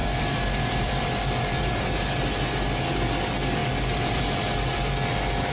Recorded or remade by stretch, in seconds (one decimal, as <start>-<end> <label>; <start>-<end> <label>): 0.0-1.7 remade; 1.7-3.6 recorded; 3.6-4.7 remade; 4.7-5.5 recorded